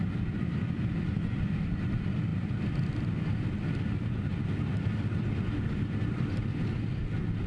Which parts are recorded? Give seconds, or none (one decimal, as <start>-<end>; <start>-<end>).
0.0-7.5